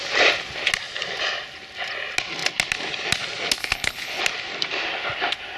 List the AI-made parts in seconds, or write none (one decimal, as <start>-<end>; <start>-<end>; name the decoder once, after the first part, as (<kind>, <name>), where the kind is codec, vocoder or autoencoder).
3.6-4.2 (codec, HILCodec)